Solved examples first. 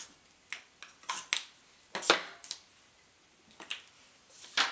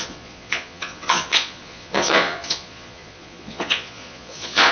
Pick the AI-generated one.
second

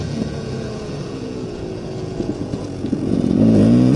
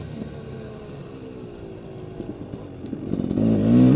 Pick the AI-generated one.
first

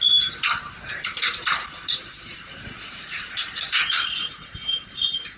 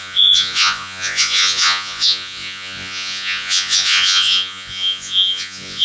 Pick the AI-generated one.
second